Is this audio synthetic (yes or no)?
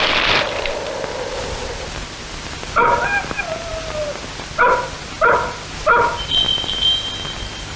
no